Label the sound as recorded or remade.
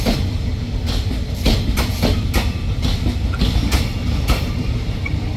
recorded